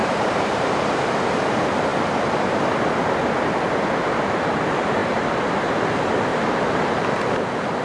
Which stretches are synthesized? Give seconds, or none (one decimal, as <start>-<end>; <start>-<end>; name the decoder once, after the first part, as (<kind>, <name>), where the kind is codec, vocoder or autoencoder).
0.0-0.8 (vocoder, BigVGAN v2); 5.0-5.6; 6.3-7.1